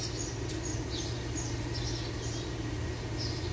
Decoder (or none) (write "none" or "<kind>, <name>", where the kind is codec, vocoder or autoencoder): none